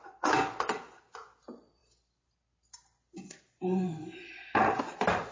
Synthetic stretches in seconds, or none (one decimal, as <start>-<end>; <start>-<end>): none